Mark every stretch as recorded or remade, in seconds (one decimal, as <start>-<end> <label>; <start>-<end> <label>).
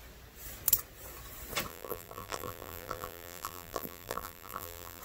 0.0-1.7 recorded; 1.7-5.0 remade